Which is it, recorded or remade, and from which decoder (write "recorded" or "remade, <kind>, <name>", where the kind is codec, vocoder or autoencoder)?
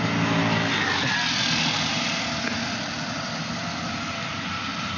recorded